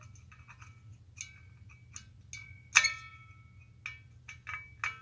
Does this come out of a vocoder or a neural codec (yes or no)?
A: no